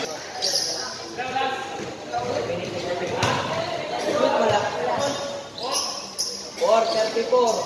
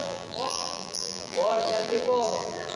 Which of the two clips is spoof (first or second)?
second